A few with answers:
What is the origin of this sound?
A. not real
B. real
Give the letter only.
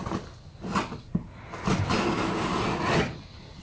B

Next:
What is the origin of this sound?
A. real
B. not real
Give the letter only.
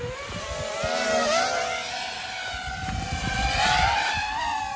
A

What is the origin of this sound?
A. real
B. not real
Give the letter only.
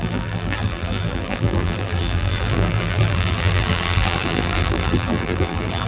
B